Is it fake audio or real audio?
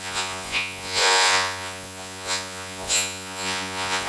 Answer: fake